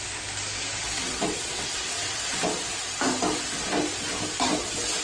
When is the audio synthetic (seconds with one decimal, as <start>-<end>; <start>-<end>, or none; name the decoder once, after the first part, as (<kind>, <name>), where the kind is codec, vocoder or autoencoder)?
1.0-2.2 (vocoder, WaveNeXt)